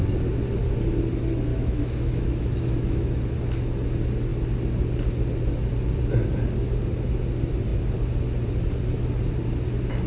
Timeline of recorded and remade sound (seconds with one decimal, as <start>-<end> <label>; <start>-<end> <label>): 0.0-1.5 recorded; 1.5-3.2 remade; 3.2-10.1 recorded